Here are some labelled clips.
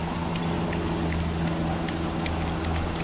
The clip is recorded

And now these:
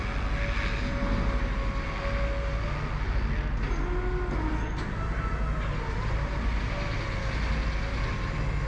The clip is recorded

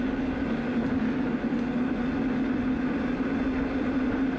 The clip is recorded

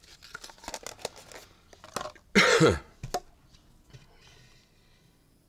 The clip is recorded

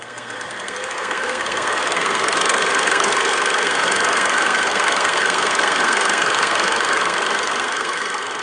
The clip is remade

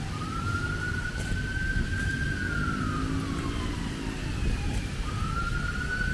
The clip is recorded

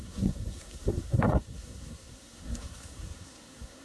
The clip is remade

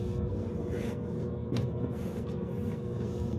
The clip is remade